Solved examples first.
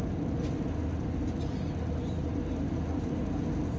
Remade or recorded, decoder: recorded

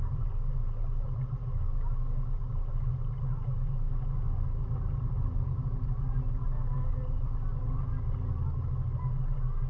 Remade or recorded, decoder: recorded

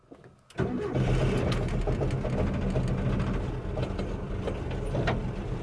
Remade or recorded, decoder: recorded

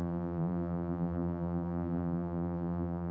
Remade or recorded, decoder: remade, vocoder, BigVGAN v2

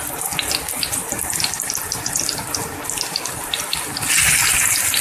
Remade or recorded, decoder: recorded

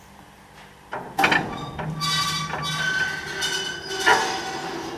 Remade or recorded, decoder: recorded